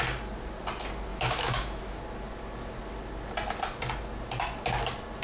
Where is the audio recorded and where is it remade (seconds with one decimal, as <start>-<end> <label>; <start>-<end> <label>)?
0.0-1.1 recorded; 1.1-2.0 remade; 2.0-5.2 recorded

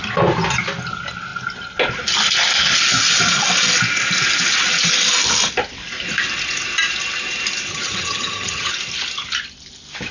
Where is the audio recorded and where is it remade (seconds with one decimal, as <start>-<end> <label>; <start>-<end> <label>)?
0.0-7.7 recorded; 7.7-8.7 remade; 8.7-10.1 recorded

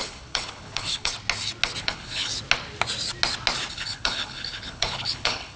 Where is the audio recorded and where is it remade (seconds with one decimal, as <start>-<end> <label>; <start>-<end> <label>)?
0.0-1.1 remade; 1.1-1.8 recorded; 1.8-2.3 remade; 2.3-3.7 recorded; 3.7-5.6 remade